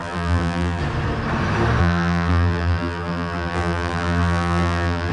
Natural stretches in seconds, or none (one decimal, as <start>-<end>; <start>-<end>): 0.8-1.8